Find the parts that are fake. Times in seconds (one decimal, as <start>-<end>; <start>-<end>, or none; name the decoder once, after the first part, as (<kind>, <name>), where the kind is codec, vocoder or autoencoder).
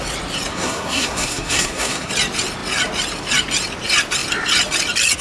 0.5-2.1 (codec, SNAC)